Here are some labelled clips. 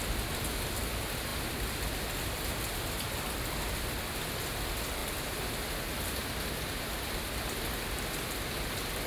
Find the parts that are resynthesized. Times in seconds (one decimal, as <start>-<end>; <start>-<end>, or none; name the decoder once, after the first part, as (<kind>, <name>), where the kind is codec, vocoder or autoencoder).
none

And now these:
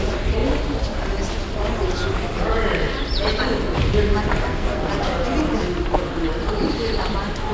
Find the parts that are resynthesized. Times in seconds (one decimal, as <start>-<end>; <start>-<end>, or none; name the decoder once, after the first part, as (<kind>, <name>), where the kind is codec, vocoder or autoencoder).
4.4-4.9 (codec, SNAC)

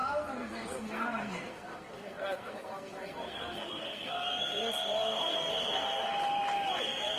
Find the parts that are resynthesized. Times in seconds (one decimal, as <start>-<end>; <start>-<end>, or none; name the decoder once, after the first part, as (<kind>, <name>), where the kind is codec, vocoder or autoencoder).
0.0-6.1 (codec, SNAC); 6.8-7.2

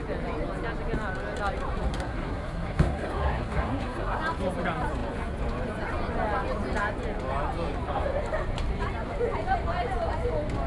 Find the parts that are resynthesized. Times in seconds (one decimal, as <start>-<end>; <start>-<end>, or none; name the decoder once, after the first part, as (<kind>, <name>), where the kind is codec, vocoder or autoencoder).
1.9-4.2 (codec, SNAC)

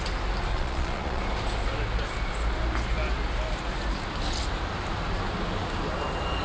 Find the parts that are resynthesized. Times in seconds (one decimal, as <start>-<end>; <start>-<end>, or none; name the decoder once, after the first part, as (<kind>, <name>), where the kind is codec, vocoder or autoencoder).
0.5-1.2 (vocoder, Vocos)

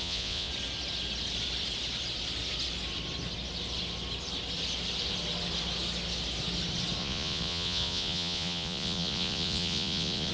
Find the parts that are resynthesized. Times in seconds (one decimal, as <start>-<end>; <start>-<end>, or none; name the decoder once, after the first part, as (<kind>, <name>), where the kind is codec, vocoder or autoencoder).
0.0-0.5 (vocoder, Vocos); 7.0-10.3